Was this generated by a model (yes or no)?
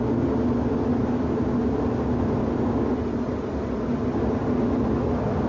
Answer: no